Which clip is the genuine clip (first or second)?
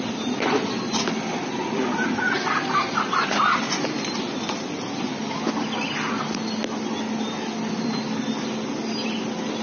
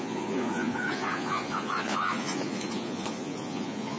first